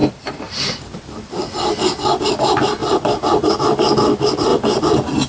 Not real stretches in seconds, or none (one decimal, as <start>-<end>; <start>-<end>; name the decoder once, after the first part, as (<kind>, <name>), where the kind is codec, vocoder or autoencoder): 0.0-0.7 (vocoder, BigVGAN v2); 2.8-3.7; 4.5-5.3